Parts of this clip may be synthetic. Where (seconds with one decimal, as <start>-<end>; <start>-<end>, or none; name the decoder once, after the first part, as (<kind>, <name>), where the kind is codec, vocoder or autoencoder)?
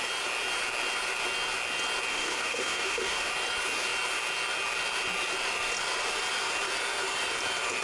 2.1-3.3 (autoencoder, DAC-VAE)